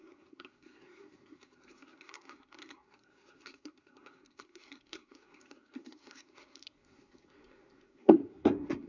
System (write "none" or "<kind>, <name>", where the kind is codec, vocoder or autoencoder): codec, SNAC